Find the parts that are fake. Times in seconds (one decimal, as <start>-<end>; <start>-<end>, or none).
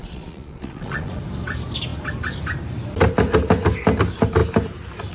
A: 0.0-1.2